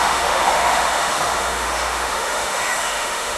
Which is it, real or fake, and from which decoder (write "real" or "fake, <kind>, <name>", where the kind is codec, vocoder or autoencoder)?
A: fake, autoencoder, DAC-VAE